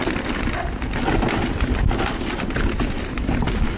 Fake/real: real